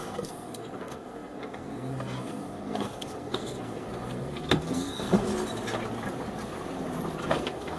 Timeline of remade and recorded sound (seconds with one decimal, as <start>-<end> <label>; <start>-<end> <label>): 0.0-5.3 remade; 5.3-7.3 recorded; 7.3-7.8 remade